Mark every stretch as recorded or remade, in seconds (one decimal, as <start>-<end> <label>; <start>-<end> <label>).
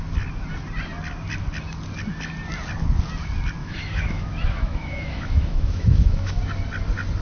0.0-3.6 recorded; 3.6-6.4 remade; 6.4-7.2 recorded